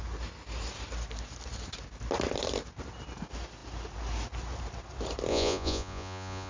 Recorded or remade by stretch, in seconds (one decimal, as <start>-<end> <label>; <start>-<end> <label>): 0.0-5.3 recorded; 5.3-6.5 remade